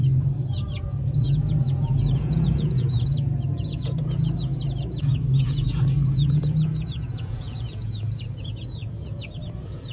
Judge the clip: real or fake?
fake